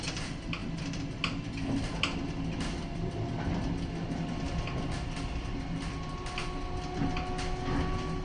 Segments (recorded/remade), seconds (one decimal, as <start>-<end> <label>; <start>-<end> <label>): 0.0-8.2 recorded